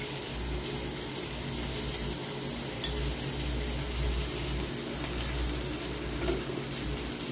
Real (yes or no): yes